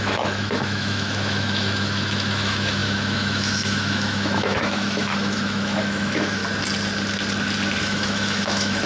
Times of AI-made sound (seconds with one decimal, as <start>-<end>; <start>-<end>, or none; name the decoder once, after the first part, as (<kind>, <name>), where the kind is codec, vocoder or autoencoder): 0.0-6.4 (autoencoder, DAC-VAE); 7.8-8.9